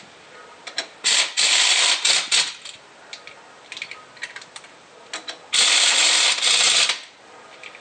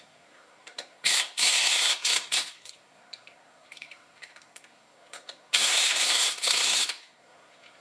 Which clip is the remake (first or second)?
second